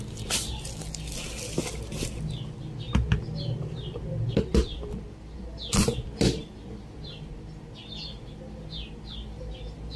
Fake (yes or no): no